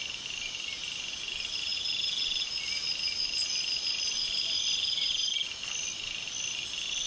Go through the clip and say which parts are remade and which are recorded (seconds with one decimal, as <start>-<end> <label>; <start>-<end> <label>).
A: 0.0-1.7 recorded; 1.7-2.6 remade; 2.6-3.4 recorded; 3.4-5.3 remade; 5.3-7.1 recorded